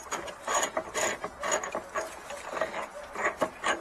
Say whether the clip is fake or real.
real